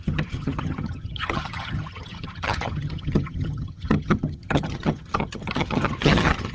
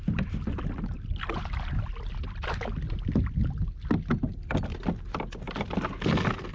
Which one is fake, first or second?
first